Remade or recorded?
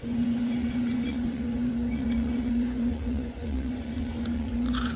remade